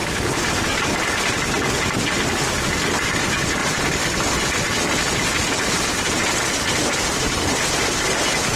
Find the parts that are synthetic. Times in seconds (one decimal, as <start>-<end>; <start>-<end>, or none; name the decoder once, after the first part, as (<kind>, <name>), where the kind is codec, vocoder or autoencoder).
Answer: none

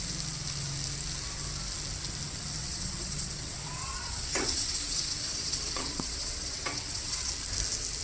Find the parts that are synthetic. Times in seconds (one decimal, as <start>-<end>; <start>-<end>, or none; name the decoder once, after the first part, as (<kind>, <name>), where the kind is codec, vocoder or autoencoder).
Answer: 2.6-7.3 (vocoder, WaveNeXt)

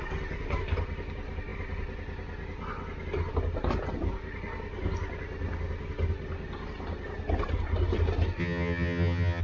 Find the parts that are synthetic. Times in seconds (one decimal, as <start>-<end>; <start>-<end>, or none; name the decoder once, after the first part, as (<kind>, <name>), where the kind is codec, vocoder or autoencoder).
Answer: 8.4-9.4 (vocoder, HiFi-GAN)